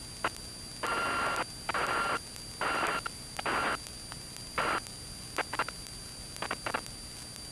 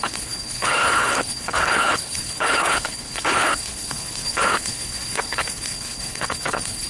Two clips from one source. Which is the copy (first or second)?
second